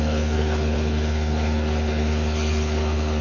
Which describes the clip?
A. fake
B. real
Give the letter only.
A